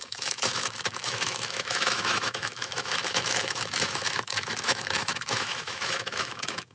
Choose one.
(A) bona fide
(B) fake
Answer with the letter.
B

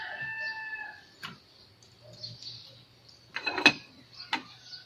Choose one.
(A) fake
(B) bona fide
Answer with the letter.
B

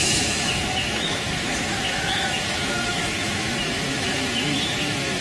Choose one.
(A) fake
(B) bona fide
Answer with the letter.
A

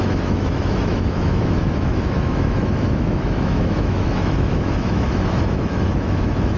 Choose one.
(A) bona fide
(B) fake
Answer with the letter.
B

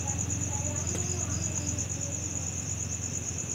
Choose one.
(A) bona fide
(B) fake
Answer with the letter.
A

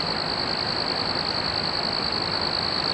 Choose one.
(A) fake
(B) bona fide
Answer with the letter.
B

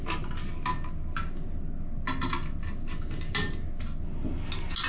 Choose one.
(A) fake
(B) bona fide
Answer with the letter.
B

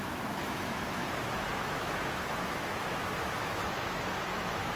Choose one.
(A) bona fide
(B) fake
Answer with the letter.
B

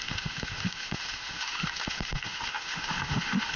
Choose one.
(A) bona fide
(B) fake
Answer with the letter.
B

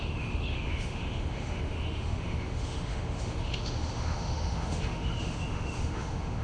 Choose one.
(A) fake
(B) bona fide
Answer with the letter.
A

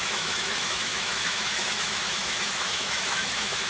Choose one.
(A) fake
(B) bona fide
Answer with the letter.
A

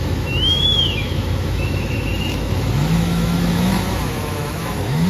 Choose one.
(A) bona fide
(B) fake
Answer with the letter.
B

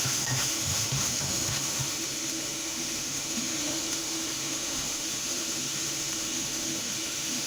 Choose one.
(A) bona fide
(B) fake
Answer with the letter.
B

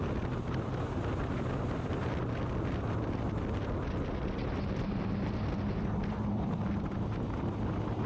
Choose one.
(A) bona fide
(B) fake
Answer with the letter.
A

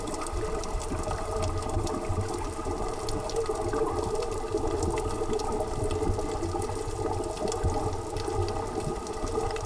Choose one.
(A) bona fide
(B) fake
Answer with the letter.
A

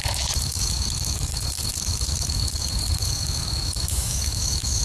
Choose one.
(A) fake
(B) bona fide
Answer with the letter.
A